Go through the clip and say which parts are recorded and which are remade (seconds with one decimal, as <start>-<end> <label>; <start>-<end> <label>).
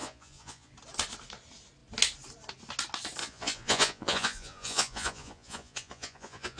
0.0-0.7 remade; 0.7-3.2 recorded; 3.2-6.6 remade